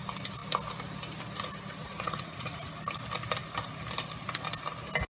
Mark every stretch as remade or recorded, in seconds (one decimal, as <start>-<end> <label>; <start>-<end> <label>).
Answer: 0.0-1.8 recorded; 1.8-2.7 remade; 2.7-5.1 recorded